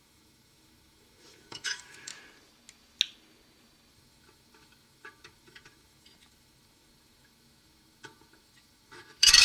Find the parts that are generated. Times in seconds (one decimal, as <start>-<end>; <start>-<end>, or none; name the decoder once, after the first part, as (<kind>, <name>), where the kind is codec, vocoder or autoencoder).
0.0-2.1 (autoencoder, DAC-VAE); 3.9-9.4